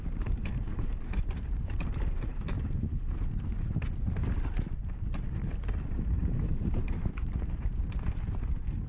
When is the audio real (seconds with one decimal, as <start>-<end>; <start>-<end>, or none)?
2.9-3.6